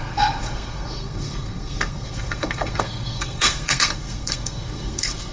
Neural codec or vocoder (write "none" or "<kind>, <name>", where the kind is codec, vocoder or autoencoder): codec, SNAC